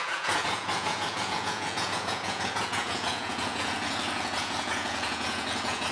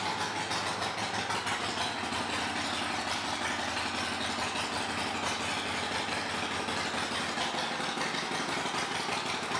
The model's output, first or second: first